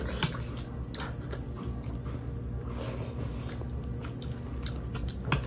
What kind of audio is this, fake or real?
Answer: real